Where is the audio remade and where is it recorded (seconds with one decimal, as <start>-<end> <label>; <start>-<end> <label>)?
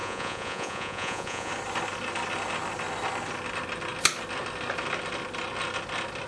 0.0-1.5 remade; 1.5-6.3 recorded